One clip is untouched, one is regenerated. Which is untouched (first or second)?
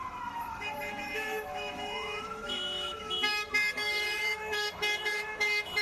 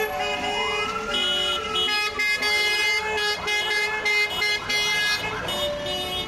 second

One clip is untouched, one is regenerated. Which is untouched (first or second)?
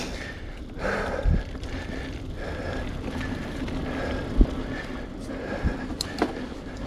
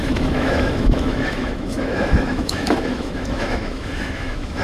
first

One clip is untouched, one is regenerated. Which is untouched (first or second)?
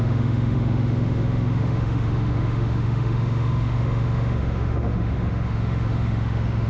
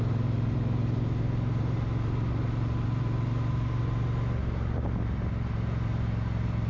second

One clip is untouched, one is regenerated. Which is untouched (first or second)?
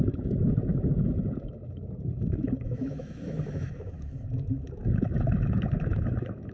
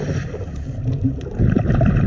second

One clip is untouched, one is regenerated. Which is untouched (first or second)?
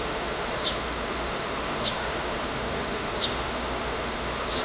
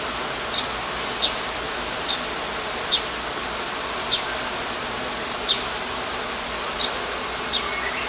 second